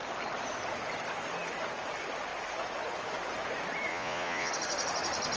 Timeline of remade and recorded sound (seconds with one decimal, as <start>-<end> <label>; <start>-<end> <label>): 0.0-3.9 recorded; 3.9-4.5 remade; 4.5-5.4 recorded